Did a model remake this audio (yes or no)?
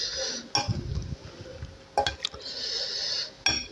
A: no